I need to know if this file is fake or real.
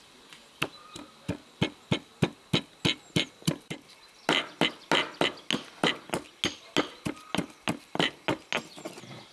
real